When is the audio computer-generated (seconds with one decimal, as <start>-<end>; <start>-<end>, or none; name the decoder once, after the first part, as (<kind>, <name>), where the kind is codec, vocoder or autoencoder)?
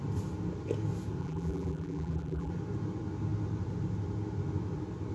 1.2-2.5 (vocoder, BigVGAN v2)